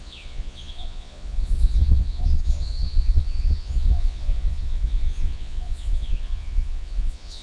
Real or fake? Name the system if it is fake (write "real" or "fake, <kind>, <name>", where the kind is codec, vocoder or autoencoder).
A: fake, vocoder, Vocos